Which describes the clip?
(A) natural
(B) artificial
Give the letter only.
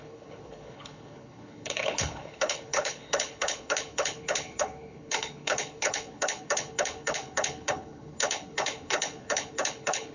B